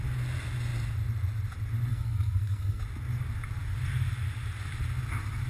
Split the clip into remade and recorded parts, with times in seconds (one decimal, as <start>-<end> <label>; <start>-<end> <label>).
0.0-1.9 recorded; 1.9-2.8 remade; 2.8-5.5 recorded